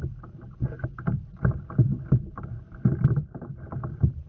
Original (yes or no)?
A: yes